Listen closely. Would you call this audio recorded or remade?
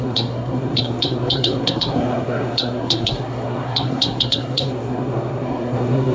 remade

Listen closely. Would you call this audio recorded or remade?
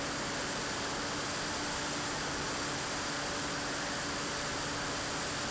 recorded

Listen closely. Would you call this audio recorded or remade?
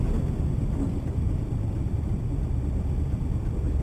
recorded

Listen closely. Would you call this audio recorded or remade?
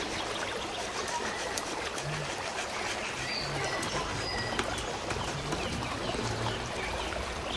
recorded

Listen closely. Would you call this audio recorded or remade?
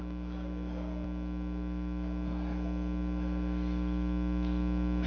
recorded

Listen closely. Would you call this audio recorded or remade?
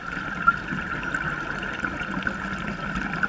recorded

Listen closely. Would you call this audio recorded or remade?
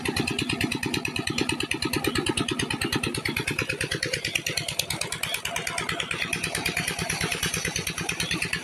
recorded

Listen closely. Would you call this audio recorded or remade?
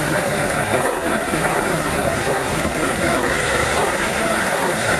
remade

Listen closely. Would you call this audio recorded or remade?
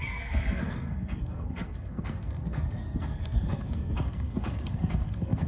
remade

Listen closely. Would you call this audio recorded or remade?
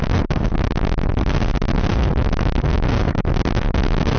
recorded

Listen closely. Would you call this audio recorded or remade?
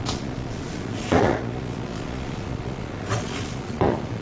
remade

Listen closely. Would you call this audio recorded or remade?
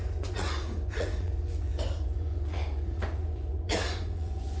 remade